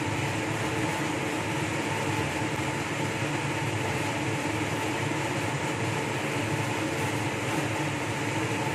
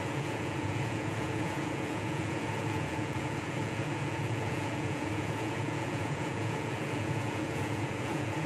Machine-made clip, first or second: second